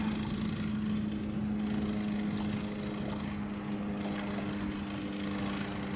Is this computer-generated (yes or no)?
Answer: no